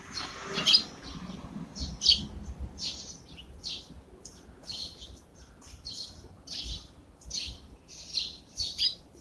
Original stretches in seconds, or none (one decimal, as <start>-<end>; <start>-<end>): 0.0-9.2